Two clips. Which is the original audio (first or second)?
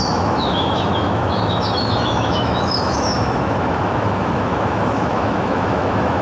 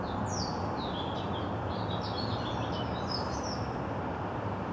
second